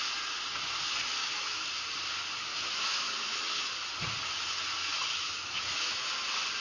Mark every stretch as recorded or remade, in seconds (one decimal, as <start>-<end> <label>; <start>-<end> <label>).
0.0-1.2 recorded; 1.2-1.7 remade; 1.7-2.5 recorded; 2.5-3.7 remade; 3.7-4.9 recorded; 4.9-6.1 remade; 6.1-6.6 recorded